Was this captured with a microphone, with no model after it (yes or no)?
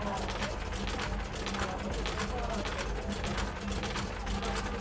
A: yes